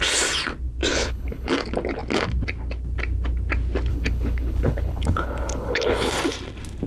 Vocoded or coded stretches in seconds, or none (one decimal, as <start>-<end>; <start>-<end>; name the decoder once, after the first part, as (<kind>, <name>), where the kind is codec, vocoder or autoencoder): 0.9-1.5 (codec, HILCodec); 3.9-6.1